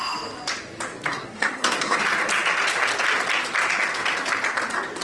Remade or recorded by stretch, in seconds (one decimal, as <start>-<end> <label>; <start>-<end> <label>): 0.0-1.1 recorded; 1.1-2.0 remade; 2.0-5.0 recorded